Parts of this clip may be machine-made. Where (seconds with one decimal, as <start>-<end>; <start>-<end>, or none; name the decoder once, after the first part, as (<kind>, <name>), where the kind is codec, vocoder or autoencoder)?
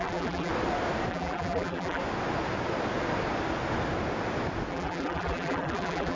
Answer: 0.0-0.5 (vocoder, BigVGAN v2); 1.1-2.0; 4.7-6.2